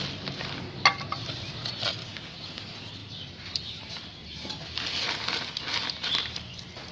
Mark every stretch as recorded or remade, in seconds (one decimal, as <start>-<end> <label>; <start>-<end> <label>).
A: 0.0-2.0 recorded; 2.0-2.6 remade; 2.6-6.9 recorded